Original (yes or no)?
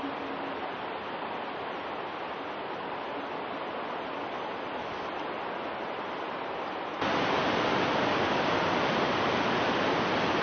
yes